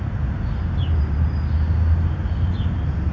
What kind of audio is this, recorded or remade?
recorded